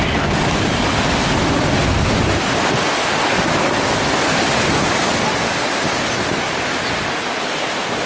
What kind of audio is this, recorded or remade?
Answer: recorded